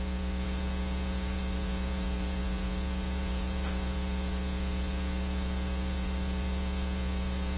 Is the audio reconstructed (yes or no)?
yes